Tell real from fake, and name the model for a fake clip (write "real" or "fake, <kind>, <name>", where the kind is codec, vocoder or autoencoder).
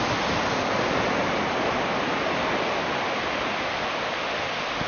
real